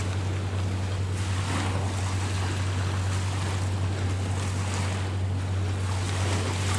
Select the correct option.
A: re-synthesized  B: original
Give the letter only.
B